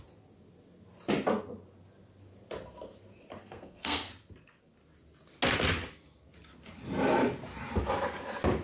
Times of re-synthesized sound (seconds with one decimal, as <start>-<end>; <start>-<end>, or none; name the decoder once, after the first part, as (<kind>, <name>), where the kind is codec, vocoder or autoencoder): 3.4-4.1 (codec, SNAC)